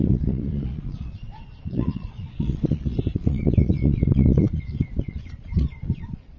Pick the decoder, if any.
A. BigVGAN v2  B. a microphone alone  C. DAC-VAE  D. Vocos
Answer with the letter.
D